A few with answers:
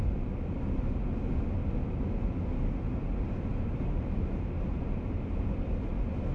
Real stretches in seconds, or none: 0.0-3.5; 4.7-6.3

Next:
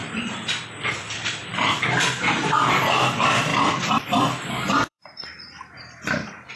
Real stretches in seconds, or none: 1.5-2.4

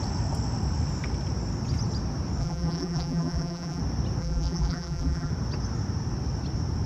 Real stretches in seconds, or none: 0.0-2.4; 3.8-4.2; 5.3-6.9